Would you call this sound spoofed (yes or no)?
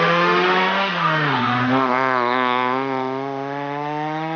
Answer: yes